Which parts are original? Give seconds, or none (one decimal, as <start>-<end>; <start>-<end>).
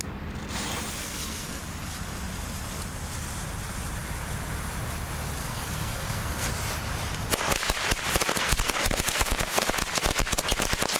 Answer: 0.0-1.0; 1.6-5.4; 6.5-8.3; 9.7-11.0